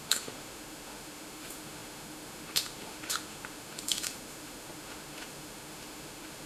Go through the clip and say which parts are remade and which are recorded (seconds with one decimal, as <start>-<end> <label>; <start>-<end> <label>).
0.0-6.5 remade